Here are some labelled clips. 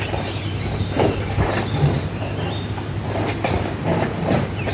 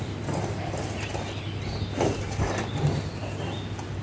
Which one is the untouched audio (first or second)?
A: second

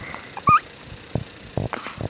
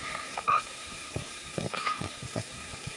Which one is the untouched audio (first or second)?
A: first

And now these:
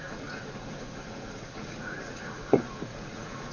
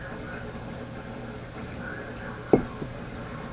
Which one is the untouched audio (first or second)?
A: second